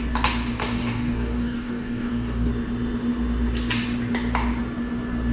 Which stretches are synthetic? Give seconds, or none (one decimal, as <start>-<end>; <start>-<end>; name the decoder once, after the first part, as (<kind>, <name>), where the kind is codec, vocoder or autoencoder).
0.6-2.5 (codec, DAC)